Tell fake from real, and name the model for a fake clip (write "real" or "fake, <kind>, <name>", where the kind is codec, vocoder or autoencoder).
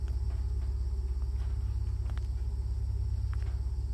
real